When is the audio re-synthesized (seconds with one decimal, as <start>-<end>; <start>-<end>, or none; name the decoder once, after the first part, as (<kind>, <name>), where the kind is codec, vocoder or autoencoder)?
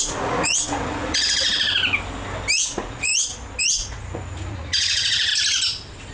0.0-1.5 (vocoder, Vocos); 2.7-3.1; 3.6-5.3